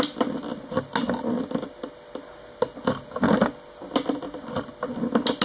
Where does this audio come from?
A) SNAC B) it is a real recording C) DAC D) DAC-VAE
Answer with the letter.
B